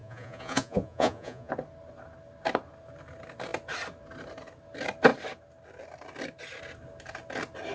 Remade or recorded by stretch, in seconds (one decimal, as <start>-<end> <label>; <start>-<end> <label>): 0.0-1.5 remade; 1.5-7.7 recorded